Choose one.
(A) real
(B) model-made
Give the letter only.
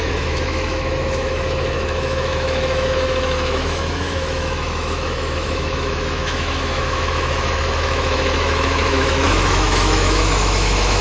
B